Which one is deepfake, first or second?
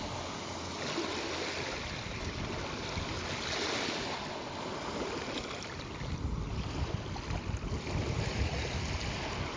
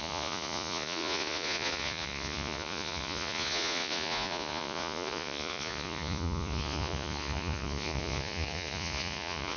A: second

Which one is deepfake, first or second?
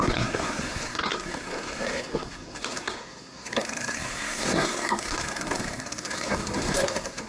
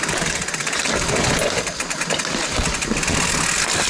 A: first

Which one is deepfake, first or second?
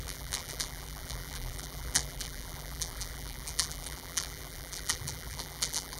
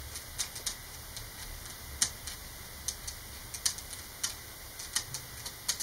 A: first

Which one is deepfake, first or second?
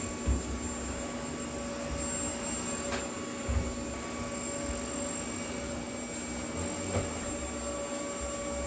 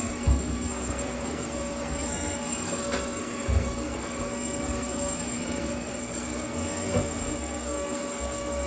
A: second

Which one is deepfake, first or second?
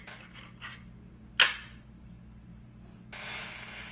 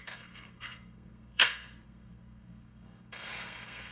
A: second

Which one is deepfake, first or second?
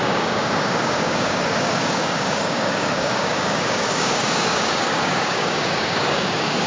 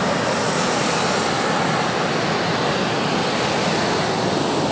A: first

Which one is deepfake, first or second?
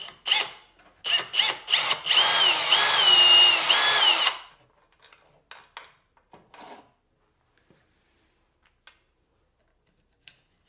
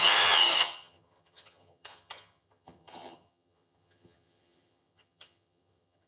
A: second